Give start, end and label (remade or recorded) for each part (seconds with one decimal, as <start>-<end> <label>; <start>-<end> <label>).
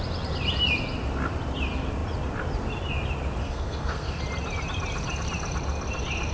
0.0-3.4 recorded; 3.4-4.2 remade; 4.2-6.3 recorded